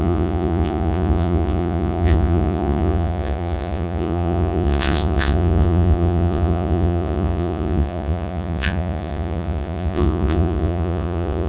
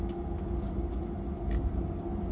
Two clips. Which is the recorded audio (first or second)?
second